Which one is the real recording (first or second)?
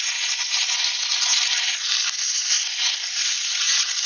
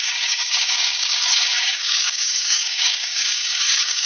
first